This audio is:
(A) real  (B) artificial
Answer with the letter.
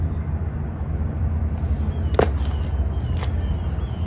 A